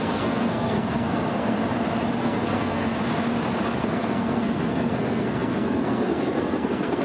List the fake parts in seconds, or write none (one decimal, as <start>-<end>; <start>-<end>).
0.0-1.6; 2.2-2.9; 3.8-7.0